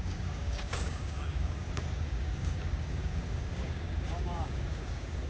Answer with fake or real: fake